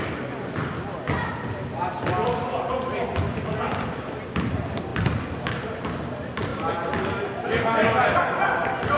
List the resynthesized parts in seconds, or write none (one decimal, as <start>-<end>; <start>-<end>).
none